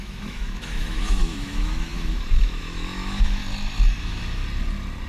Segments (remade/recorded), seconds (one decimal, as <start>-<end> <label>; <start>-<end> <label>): 0.0-3.4 remade; 3.4-4.0 recorded; 4.0-4.4 remade; 4.4-5.1 recorded